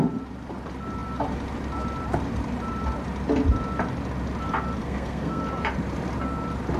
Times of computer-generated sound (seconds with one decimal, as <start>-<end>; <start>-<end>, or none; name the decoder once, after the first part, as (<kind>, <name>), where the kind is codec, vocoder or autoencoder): 4.8-5.4 (codec, SNAC)